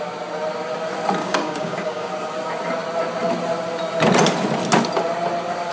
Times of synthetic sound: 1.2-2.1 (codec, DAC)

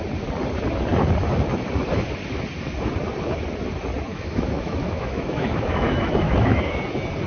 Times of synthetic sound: 4.1-6.8 (autoencoder, DAC-VAE)

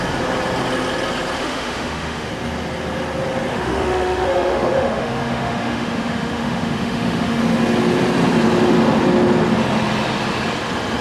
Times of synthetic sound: 1.4-2.3 (autoencoder, DAC-VAE); 3.5-7.4

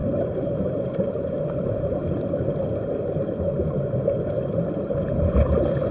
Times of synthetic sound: 0.0-0.8 (vocoder, BigVGAN v2)

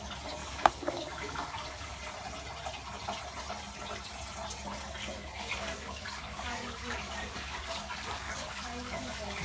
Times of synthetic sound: 0.4-2.0 (codec, DAC); 5.0-9.4

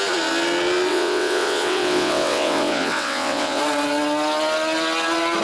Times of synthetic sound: 0.9-3.6 (vocoder, WaveNeXt)

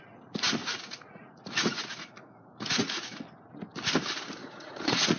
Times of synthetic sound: 0.6-3.2 (vocoder, Vocos); 4.4-5.2

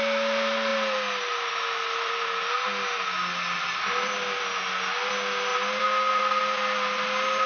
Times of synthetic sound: none